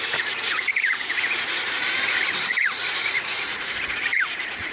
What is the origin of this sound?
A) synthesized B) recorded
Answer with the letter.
A